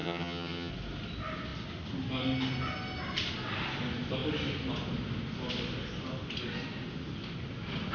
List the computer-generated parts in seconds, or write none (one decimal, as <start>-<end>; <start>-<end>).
0.0-0.7